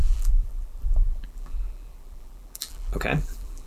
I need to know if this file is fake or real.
fake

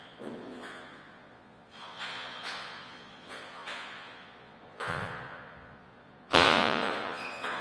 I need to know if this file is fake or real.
fake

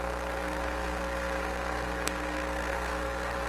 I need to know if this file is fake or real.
fake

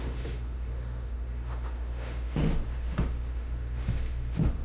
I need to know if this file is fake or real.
fake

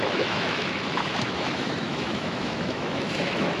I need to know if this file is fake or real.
fake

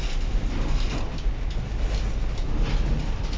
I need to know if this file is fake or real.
real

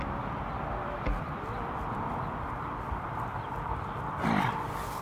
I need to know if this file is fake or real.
fake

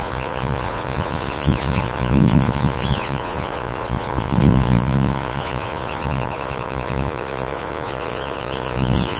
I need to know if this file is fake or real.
fake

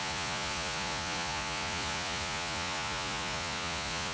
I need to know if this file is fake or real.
fake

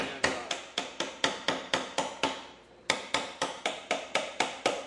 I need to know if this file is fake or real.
fake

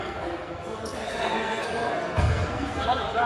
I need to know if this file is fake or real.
fake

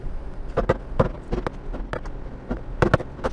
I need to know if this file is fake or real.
real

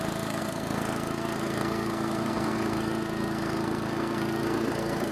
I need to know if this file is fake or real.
fake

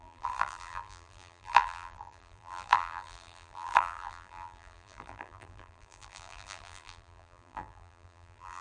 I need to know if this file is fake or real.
fake